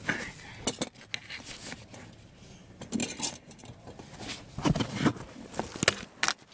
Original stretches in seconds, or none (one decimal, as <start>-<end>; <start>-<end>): 0.0-6.5